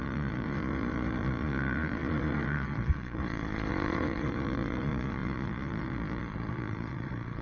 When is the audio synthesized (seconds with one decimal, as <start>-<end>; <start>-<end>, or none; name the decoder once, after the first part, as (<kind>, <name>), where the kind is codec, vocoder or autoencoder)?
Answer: 0.0-7.4 (vocoder, Vocos)